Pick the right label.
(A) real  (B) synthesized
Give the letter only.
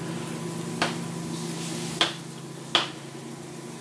A